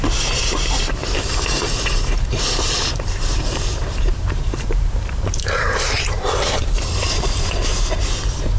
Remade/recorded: remade